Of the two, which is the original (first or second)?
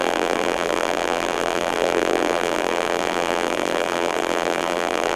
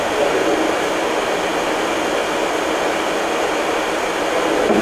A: second